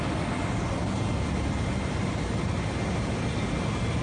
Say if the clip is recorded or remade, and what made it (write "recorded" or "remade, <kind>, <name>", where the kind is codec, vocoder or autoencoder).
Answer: recorded